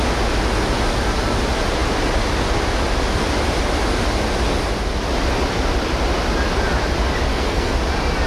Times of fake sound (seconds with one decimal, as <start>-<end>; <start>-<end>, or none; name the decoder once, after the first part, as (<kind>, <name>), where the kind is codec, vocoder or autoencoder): 7.3-7.8 (codec, SNAC)